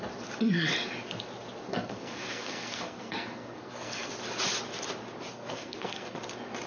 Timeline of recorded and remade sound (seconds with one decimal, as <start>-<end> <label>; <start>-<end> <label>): 0.0-1.7 recorded; 1.7-4.1 remade; 4.1-5.3 recorded; 5.3-6.2 remade; 6.2-6.7 recorded